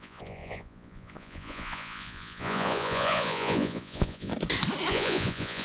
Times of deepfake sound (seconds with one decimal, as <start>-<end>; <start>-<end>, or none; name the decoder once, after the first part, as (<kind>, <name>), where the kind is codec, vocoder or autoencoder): 0.0-4.3 (vocoder, Vocos); 4.9-5.6

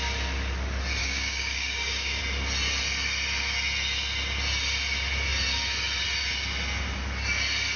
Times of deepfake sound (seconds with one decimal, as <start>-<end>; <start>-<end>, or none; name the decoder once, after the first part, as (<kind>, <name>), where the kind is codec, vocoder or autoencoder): 1.0-2.2 (codec, DAC)

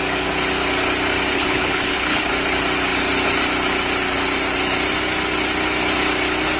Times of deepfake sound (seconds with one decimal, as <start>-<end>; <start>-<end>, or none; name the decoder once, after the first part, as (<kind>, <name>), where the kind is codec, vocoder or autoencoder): 1.3-2.3 (codec, HILCodec)

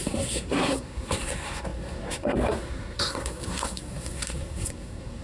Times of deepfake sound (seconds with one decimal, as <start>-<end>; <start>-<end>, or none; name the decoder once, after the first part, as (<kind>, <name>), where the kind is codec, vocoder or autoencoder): 0.0-5.2 (codec, SNAC)

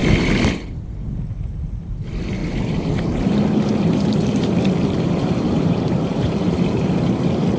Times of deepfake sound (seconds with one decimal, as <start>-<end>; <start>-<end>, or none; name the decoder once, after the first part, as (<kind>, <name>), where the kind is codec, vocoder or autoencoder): 2.4-6.9 (vocoder, BigVGAN v2)

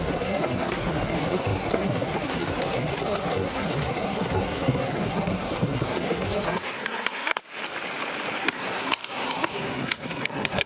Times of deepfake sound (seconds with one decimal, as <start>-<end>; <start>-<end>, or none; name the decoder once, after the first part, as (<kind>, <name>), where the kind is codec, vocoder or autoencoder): 0.0-7.4 (codec, SNAC); 8.4-10.7

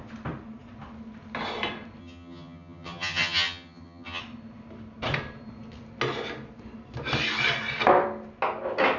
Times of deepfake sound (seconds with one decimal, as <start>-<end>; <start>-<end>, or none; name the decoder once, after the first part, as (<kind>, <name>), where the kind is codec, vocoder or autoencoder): 2.0-4.2 (vocoder, HiFi-GAN)